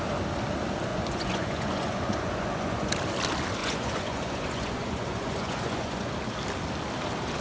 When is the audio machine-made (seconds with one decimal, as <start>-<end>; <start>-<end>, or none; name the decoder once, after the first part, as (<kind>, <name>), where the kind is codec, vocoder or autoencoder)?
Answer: 0.9-2.9 (vocoder, Vocos); 3.6-6.1